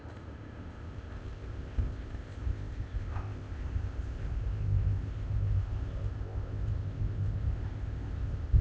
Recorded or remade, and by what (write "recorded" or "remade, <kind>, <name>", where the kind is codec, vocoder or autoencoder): remade, codec, ZipCodec